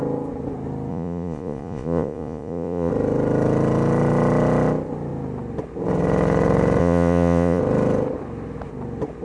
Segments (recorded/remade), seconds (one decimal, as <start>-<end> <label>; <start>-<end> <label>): 0.0-0.9 recorded; 0.9-2.9 remade; 2.9-6.8 recorded; 6.8-7.6 remade; 7.6-9.2 recorded